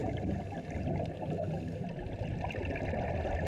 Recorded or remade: recorded